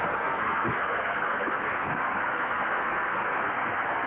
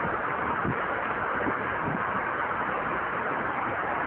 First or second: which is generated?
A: first